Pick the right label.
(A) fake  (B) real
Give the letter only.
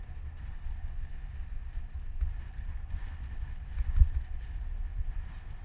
B